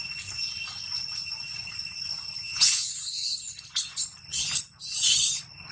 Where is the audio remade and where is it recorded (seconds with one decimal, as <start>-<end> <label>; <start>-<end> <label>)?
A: 0.0-2.4 recorded; 2.4-2.9 remade; 2.9-5.7 recorded